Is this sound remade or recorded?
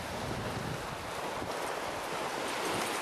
recorded